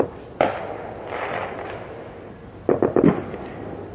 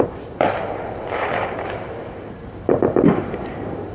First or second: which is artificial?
second